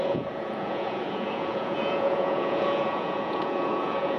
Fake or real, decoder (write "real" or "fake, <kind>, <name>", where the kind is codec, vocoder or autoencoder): fake, vocoder, Vocos